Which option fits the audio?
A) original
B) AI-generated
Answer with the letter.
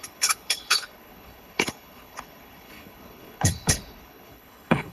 B